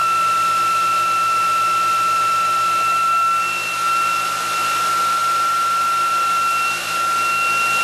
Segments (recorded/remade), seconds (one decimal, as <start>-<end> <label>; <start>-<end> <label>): 0.0-7.8 recorded